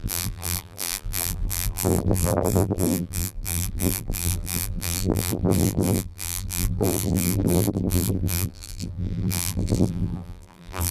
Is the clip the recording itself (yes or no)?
no